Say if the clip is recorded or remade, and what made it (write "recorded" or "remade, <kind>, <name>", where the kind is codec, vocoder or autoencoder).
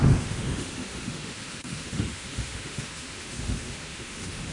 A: remade, autoencoder, DAC-VAE